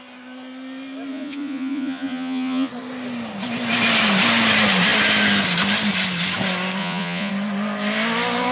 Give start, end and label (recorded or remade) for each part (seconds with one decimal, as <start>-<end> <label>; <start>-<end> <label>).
0.0-1.1 recorded; 1.1-2.7 remade; 2.7-6.8 recorded; 6.8-7.3 remade; 7.3-8.5 recorded